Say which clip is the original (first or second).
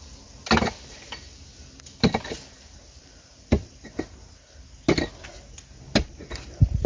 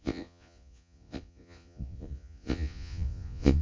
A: first